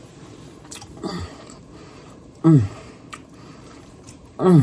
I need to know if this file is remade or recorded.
remade